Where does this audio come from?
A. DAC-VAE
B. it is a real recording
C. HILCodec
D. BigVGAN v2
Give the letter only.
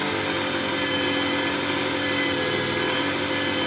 B